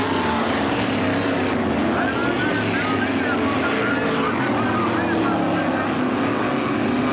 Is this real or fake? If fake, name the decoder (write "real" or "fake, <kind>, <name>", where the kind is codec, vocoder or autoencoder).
real